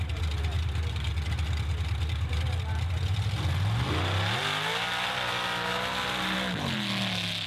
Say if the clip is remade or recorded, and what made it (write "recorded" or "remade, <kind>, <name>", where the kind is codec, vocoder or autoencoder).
recorded